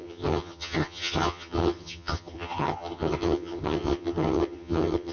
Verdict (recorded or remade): remade